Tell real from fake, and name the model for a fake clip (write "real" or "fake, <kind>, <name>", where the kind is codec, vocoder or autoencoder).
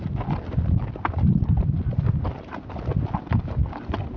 real